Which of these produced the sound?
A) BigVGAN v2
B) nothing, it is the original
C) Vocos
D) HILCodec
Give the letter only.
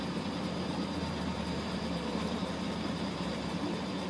A